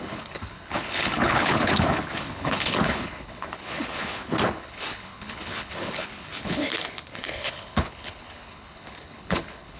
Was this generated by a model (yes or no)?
yes